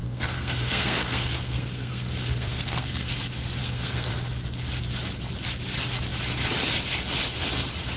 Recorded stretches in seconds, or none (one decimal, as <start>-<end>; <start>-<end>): 3.1-3.6; 4.1-8.0